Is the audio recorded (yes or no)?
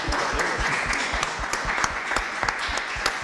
no